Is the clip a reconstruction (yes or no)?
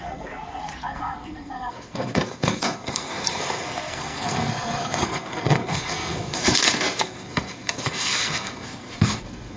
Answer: yes